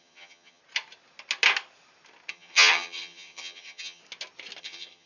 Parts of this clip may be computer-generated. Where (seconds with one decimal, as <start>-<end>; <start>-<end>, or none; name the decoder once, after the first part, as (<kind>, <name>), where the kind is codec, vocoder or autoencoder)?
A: 0.0-0.6 (vocoder, HiFi-GAN); 2.3-4.0; 4.6-5.1